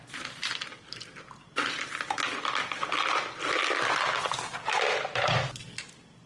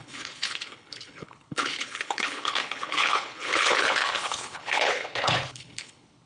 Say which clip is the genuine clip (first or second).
first